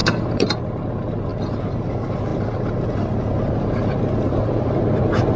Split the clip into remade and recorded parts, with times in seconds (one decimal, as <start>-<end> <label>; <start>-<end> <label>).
0.0-5.4 recorded